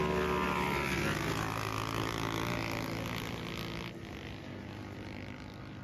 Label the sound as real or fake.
real